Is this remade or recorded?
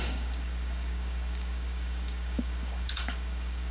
remade